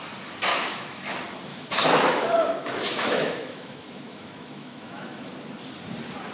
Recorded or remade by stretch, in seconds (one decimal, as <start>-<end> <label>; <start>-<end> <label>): 0.0-0.5 recorded; 0.5-1.1 remade; 1.1-1.5 recorded; 1.5-5.3 remade; 5.3-6.3 recorded